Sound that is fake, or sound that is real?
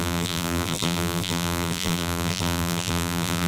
fake